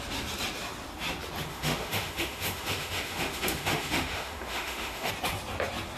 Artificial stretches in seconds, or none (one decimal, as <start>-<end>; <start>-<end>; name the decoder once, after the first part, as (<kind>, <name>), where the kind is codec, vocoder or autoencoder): 1.5-5.1 (autoencoder, DAC-VAE)